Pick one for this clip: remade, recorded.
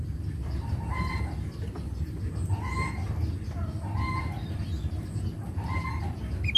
recorded